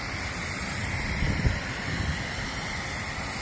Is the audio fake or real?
real